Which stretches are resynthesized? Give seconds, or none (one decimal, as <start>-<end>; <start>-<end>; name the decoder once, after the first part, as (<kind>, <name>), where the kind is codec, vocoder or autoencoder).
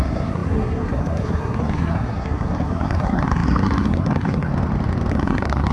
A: 0.0-4.5 (codec, SNAC); 5.1-5.7